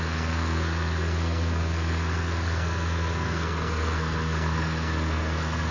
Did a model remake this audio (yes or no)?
yes